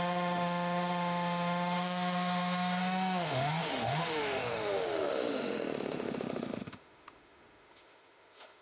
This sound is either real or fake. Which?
fake